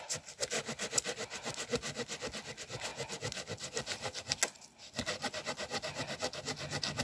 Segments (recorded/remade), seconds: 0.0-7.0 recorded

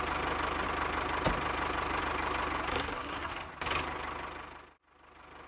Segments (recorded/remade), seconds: 0.0-2.7 recorded; 2.7-3.3 remade; 3.3-5.5 recorded

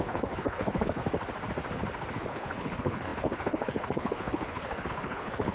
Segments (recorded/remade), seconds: 0.0-1.0 remade; 1.0-2.1 recorded; 2.1-5.5 remade

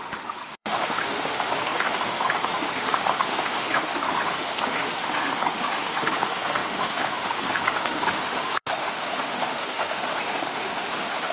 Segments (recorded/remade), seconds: 0.0-11.3 remade